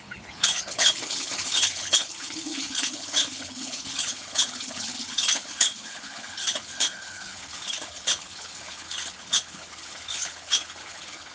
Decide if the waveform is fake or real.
fake